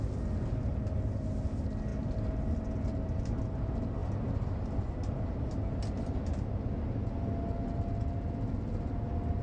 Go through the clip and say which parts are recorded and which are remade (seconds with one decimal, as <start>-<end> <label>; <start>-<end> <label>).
0.0-9.4 recorded